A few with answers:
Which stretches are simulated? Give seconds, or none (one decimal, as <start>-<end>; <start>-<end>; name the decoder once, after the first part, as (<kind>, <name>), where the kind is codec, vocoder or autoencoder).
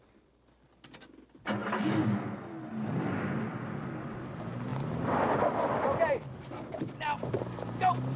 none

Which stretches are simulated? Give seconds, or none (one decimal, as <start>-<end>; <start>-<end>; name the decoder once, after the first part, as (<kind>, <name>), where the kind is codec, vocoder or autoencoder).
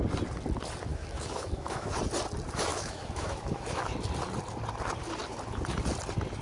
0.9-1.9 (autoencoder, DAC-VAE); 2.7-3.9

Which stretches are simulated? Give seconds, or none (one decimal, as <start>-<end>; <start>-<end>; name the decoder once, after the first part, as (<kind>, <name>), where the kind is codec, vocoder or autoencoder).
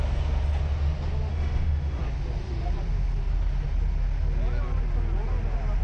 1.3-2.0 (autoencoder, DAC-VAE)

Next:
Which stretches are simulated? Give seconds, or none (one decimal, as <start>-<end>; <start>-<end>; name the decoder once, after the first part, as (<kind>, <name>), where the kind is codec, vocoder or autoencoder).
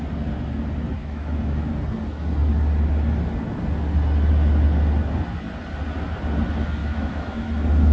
1.0-1.7 (autoencoder, DAC-VAE); 6.8-7.5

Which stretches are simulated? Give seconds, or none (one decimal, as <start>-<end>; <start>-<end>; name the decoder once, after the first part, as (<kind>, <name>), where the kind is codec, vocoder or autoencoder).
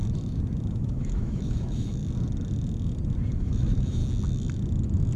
0.7-2.0 (autoencoder, DAC-VAE); 3.4-4.0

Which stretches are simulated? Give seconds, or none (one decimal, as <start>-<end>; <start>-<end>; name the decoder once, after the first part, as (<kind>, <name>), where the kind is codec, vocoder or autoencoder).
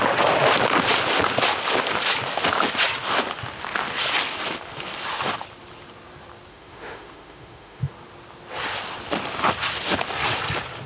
6.5-7.9 (autoencoder, DAC-VAE)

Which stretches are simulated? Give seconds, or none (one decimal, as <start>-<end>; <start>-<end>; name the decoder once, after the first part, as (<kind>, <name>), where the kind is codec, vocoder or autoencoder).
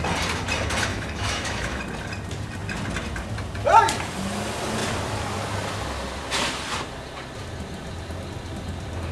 0.9-1.8 (autoencoder, DAC-VAE)